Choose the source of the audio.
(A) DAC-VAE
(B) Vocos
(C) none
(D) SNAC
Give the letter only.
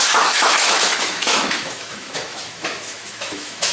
A